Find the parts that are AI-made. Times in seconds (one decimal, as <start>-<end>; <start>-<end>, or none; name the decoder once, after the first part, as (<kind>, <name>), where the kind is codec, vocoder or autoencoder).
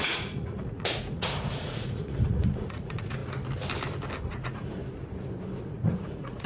0.0-3.2 (vocoder, Vocos); 4.2-4.8; 5.6-6.5